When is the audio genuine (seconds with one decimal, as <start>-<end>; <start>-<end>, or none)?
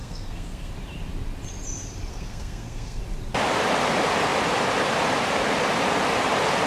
0.7-2.1; 3.0-6.7